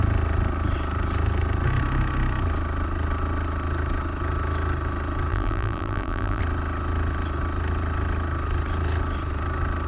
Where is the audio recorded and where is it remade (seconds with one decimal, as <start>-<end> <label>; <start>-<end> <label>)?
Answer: 0.0-5.3 recorded; 5.3-6.4 remade; 6.4-9.9 recorded